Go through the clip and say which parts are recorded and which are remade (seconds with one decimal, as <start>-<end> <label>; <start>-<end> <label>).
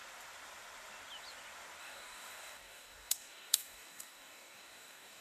0.0-1.8 recorded; 1.8-5.2 remade